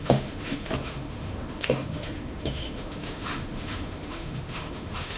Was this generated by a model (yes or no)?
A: yes